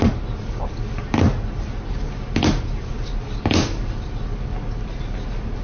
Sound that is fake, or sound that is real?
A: real